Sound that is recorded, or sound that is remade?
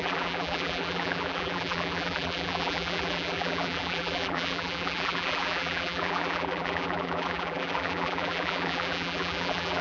remade